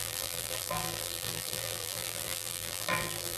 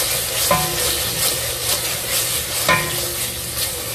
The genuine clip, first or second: second